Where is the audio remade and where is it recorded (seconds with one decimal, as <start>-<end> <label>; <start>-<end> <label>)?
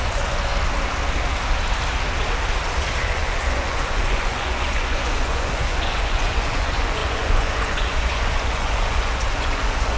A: 0.0-0.5 remade; 0.5-3.0 recorded; 3.0-10.0 remade